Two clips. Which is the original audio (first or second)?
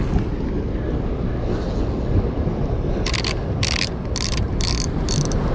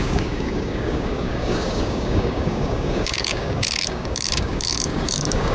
first